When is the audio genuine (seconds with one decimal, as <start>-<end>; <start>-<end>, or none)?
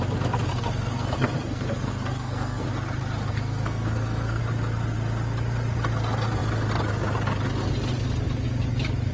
0.0-0.5; 2.7-3.3; 4.4-9.1